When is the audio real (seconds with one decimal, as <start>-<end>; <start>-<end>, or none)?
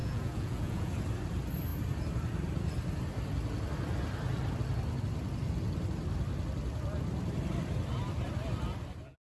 0.9-9.3